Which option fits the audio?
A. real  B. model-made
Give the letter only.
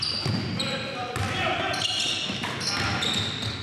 A